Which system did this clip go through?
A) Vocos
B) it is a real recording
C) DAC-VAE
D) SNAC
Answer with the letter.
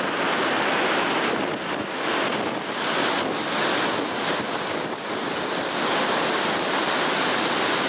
B